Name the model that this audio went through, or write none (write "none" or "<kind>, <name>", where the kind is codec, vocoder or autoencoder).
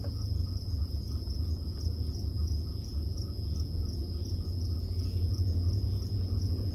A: vocoder, Vocos